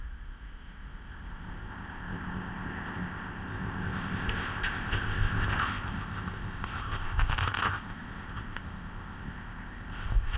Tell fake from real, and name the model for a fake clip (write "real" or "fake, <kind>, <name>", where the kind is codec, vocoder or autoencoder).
fake, codec, ZipCodec